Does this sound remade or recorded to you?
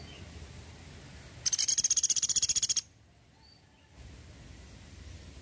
recorded